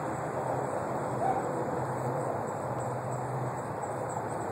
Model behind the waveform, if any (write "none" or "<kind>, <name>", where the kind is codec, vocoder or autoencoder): vocoder, BigVGAN v2